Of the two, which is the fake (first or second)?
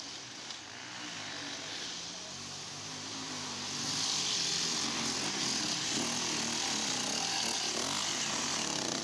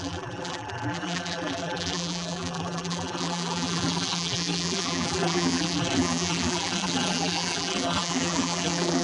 second